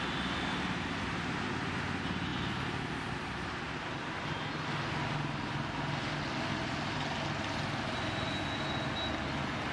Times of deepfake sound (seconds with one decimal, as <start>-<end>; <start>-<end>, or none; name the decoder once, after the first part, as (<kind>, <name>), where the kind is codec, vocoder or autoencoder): none